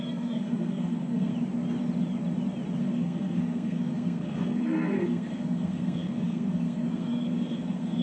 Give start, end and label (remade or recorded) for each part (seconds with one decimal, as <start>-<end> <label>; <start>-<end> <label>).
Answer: 0.0-1.3 remade; 1.3-2.8 recorded; 2.8-8.0 remade